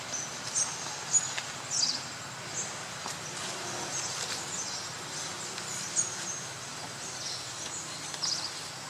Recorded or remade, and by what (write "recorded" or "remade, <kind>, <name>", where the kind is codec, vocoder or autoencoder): recorded